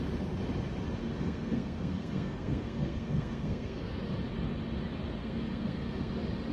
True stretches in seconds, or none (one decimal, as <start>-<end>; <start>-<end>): 0.0-1.0; 4.0-5.2; 6.1-6.5